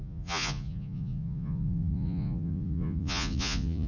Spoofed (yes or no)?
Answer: yes